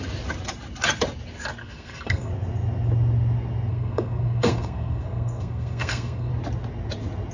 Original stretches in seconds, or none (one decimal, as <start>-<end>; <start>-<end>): 0.0-1.6; 2.3-3.7; 6.3-7.3